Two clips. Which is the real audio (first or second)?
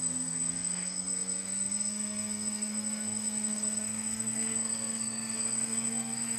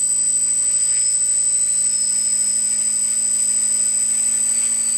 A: second